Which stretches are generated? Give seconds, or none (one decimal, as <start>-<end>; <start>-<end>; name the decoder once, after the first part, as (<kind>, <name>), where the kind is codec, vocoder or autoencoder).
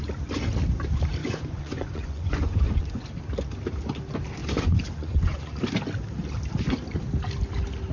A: 1.2-3.0 (vocoder, Vocos); 4.4-5.6